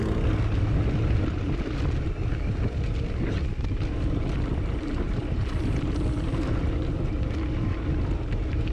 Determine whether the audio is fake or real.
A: real